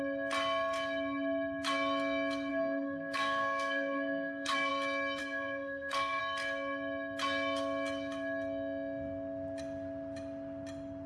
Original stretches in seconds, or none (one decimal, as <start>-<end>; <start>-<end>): 0.0-2.5; 4.7-5.2; 6.2-11.1